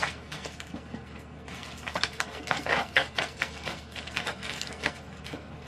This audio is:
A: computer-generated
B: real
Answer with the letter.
A